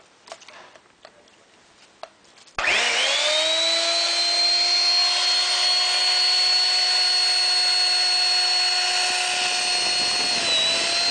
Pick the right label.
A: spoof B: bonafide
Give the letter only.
B